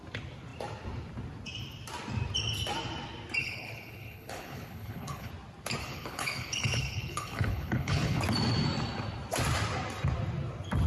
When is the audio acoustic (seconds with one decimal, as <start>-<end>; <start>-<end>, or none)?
0.0-3.4; 5.3-5.8; 8.2-10.9